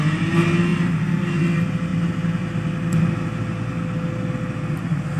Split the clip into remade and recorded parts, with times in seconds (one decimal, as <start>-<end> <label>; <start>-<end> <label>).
0.0-5.2 recorded